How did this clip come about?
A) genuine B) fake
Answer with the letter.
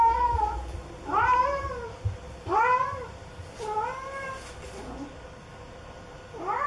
A